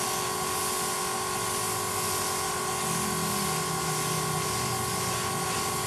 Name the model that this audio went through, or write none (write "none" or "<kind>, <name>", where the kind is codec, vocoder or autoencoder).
none